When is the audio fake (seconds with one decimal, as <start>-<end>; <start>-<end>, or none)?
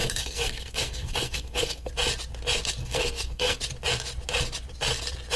0.0-1.9; 2.8-3.6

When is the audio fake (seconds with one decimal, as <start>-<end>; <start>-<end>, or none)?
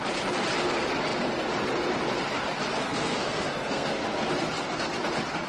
2.7-4.3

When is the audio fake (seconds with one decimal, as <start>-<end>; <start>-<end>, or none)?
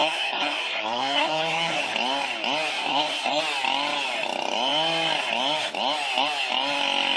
0.0-1.8; 2.7-3.4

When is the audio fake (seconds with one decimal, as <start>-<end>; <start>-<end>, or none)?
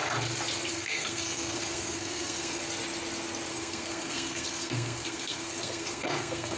0.7-2.6; 3.5-6.6